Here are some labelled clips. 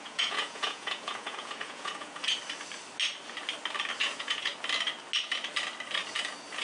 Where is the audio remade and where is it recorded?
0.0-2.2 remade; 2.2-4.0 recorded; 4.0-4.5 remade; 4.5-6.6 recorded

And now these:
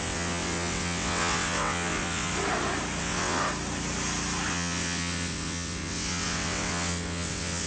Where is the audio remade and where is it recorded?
0.0-2.3 remade; 2.3-3.0 recorded; 3.0-3.4 remade; 3.4-4.5 recorded; 4.5-7.7 remade

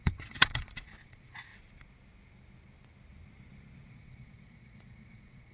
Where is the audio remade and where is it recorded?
0.0-1.5 remade; 1.5-3.9 recorded; 3.9-5.5 remade

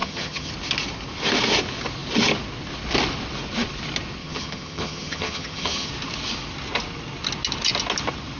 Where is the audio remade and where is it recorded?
0.0-0.5 remade; 0.5-4.2 recorded; 4.2-5.9 remade; 5.9-8.4 recorded

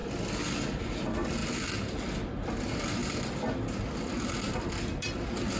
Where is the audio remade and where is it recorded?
0.0-5.6 recorded

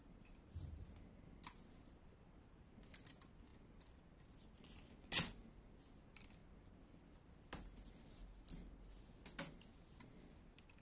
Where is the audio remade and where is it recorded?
0.0-10.8 recorded

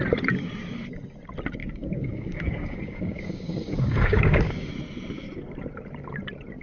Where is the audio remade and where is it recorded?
0.0-1.6 recorded; 1.6-4.7 remade; 4.7-6.6 recorded